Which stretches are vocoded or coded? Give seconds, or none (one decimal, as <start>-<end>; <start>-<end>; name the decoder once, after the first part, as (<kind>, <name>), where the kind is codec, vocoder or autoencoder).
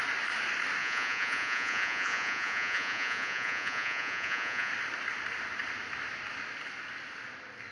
0.8-4.7 (vocoder, Vocos)